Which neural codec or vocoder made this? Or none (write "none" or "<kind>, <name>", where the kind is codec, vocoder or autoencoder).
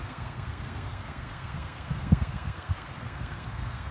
codec, SNAC